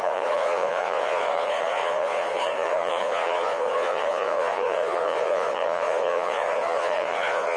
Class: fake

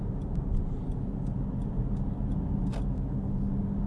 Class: real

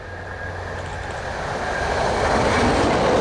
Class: real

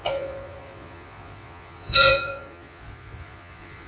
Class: fake